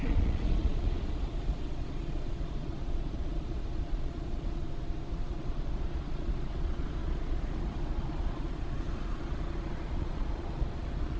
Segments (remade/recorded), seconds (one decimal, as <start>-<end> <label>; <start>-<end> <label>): 0.0-4.6 remade; 4.6-5.1 recorded; 5.1-11.2 remade